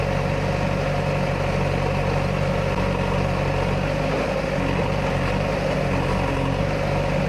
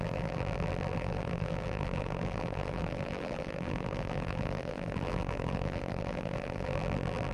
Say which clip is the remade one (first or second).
second